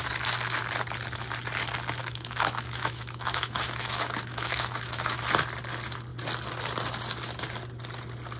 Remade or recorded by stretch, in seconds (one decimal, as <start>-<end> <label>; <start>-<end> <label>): 0.0-2.0 recorded; 2.0-5.2 remade; 5.2-8.4 recorded